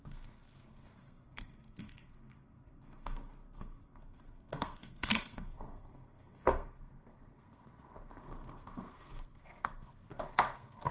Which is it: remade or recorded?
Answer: remade